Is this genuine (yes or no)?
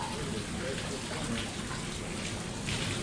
yes